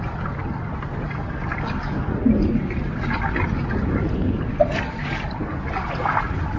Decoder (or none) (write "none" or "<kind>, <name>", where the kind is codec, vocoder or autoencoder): none